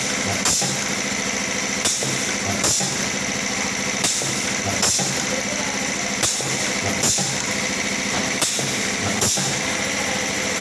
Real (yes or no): yes